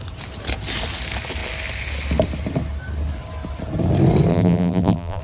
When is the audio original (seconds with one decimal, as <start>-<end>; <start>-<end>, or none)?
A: 0.0-4.3